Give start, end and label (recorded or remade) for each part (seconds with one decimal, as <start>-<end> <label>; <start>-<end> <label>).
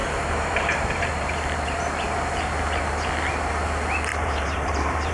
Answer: 0.0-2.4 remade; 2.4-4.1 recorded; 4.1-5.1 remade